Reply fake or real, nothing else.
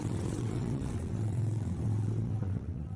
fake